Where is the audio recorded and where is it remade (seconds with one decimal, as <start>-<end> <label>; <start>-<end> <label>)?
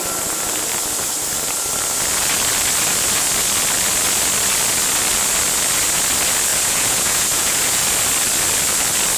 0.0-6.5 recorded; 6.5-7.8 remade; 7.8-9.2 recorded